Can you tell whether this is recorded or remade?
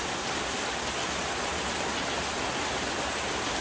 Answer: recorded